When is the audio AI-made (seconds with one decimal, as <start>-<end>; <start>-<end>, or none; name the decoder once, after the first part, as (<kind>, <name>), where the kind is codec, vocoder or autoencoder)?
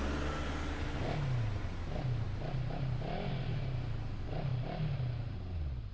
4.5-5.4 (vocoder, BigVGAN v2)